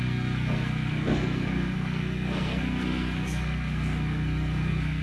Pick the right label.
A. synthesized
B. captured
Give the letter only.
A